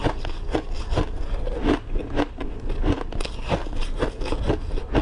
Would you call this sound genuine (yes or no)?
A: yes